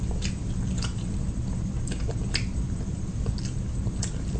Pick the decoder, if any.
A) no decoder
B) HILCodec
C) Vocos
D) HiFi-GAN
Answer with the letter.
A